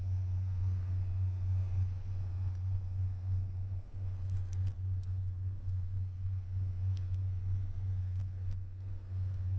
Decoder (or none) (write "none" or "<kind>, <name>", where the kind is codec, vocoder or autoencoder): codec, SNAC